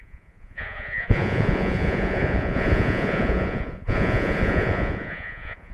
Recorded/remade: remade